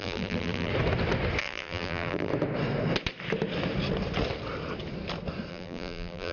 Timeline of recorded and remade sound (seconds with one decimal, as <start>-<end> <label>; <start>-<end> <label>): 0.0-0.7 remade; 0.7-1.4 recorded; 1.4-2.3 remade; 2.3-5.5 recorded; 5.5-6.3 remade